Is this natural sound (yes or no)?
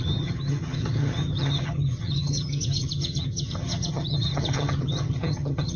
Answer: no